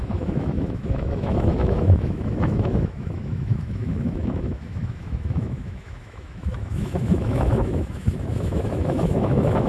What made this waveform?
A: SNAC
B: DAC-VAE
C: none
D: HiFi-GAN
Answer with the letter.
B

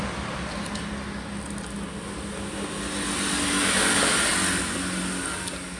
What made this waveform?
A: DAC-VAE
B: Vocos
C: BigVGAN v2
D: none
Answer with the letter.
D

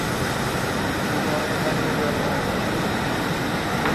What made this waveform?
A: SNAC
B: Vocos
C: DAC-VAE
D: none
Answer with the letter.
D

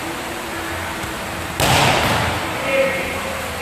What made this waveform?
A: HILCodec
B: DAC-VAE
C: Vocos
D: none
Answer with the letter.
D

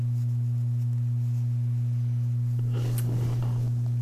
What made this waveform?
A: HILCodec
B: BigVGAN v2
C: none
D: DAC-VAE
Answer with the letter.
C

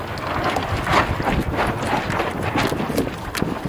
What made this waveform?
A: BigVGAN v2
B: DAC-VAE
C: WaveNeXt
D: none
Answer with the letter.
D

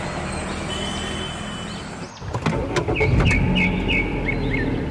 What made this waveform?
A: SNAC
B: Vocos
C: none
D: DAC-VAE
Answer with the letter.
C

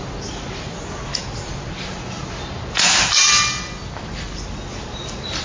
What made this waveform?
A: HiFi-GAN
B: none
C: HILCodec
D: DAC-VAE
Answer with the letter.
B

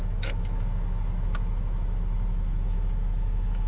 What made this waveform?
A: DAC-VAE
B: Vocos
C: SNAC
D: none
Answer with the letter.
A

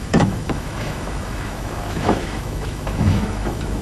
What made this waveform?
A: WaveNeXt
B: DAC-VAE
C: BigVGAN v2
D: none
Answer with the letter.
B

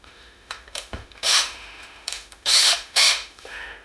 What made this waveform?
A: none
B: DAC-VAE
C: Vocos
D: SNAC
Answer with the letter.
B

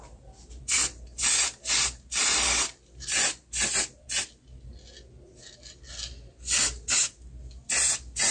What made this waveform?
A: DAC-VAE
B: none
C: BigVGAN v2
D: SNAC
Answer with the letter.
B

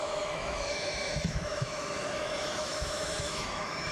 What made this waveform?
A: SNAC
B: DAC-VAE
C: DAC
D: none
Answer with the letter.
B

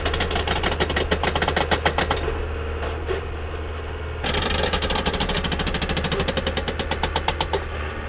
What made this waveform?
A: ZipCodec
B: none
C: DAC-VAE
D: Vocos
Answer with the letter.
B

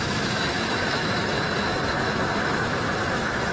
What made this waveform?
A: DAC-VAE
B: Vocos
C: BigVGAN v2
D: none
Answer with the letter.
A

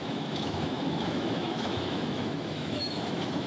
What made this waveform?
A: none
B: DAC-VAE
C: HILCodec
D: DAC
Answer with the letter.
B